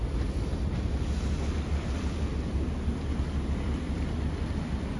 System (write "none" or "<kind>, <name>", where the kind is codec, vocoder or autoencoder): none